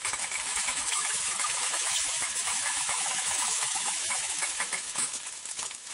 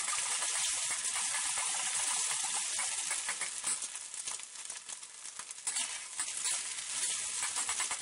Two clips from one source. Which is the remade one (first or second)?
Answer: first